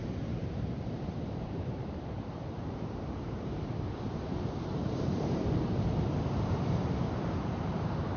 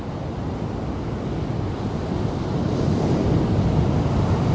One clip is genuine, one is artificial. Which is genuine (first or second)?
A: second